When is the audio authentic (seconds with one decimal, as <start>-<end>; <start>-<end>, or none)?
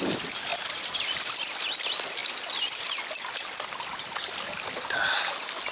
0.0-5.7